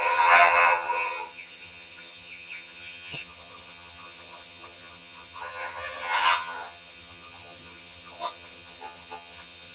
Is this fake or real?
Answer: fake